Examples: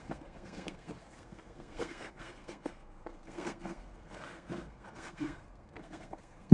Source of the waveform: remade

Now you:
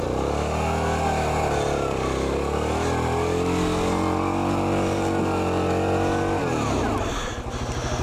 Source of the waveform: recorded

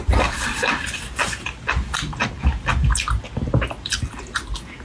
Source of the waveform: recorded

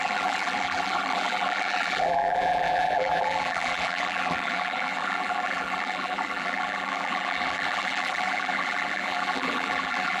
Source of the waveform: remade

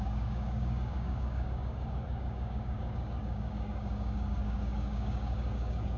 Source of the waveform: remade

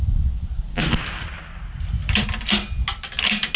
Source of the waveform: recorded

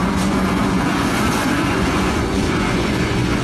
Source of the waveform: remade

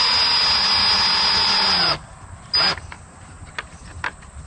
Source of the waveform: recorded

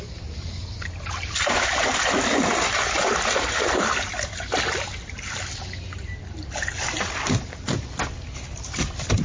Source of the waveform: recorded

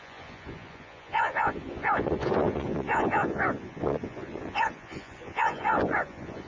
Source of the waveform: remade